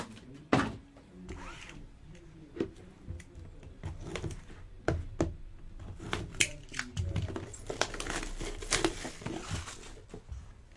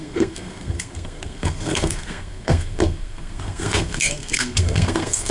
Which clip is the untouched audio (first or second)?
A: first